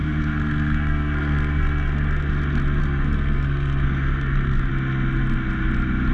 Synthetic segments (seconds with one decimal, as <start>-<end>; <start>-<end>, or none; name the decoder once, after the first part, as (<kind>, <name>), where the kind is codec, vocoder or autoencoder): 0.0-2.3 (codec, SNAC); 2.8-4.7